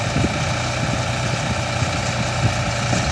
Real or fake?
real